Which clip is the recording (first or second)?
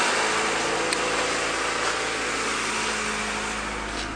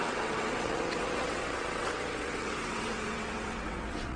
first